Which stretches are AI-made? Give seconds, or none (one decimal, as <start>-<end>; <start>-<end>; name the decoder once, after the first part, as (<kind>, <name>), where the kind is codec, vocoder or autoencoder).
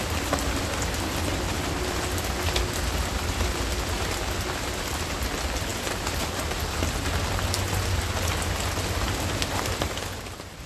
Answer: none